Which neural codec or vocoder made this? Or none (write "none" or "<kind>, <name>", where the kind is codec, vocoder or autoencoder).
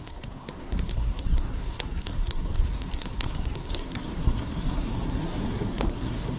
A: codec, SNAC